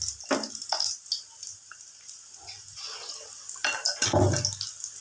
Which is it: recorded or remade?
recorded